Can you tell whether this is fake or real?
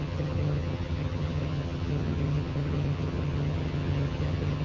fake